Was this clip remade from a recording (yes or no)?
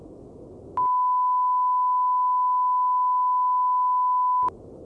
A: no